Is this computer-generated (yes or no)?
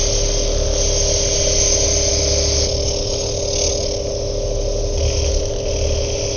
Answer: no